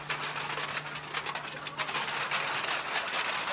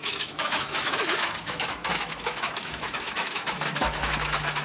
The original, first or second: first